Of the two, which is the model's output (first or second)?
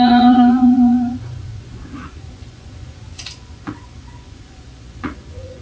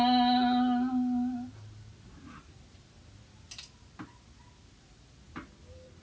first